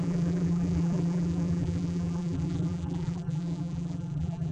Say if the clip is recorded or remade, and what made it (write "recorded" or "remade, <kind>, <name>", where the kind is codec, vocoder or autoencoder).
remade, vocoder, BigVGAN v2